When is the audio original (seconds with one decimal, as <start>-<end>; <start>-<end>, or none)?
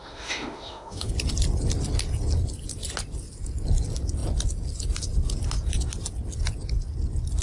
1.1-7.4